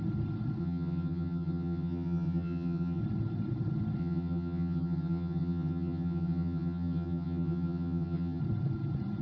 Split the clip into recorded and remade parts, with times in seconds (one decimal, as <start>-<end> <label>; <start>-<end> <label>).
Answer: 0.0-0.6 recorded; 0.6-3.0 remade; 3.0-4.0 recorded; 4.0-8.4 remade; 8.4-9.2 recorded